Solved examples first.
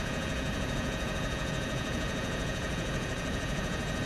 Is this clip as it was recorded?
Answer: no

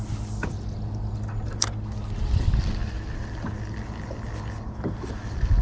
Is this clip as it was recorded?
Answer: yes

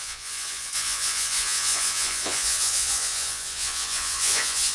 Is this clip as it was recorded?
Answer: no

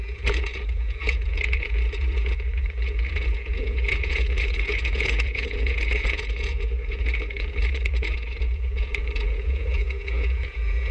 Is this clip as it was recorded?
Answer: no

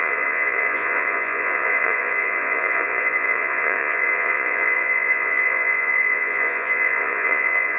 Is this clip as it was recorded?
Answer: no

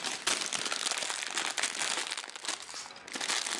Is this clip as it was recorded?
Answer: yes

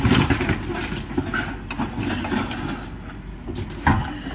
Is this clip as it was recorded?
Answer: yes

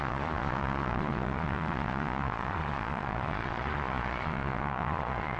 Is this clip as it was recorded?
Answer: no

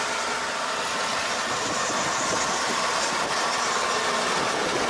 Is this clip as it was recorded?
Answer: yes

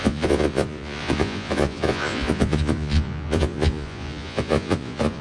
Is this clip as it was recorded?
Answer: no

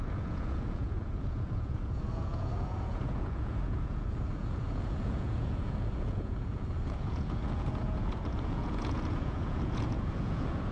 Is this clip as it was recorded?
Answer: no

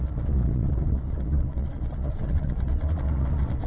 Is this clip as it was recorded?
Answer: no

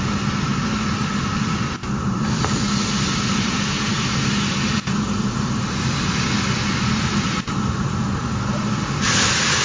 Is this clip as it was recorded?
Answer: yes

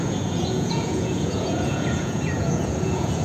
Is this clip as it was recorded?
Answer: no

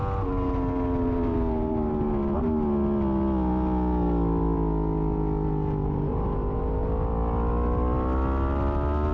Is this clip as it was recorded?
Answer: yes